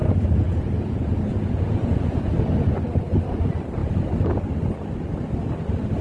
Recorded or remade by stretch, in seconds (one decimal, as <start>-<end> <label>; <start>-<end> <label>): 0.0-2.4 remade; 2.4-6.0 recorded